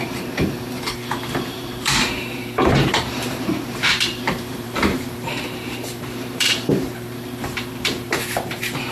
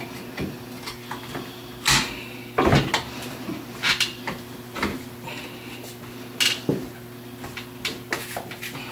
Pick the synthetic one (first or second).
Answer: first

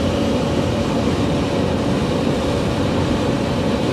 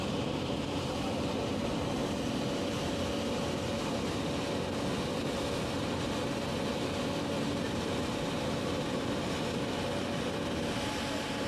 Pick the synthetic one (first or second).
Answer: first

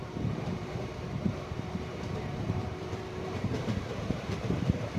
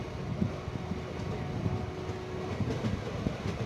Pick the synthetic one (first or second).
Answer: first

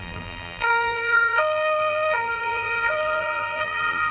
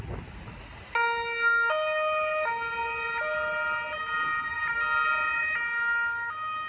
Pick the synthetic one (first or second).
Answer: first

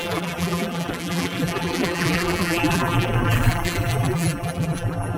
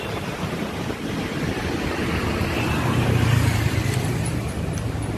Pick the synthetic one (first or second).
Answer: first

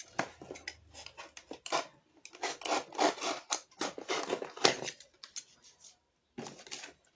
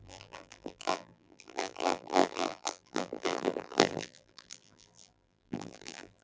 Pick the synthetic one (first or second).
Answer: second